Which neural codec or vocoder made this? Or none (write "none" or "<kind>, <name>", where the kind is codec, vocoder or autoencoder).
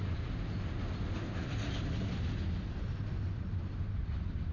none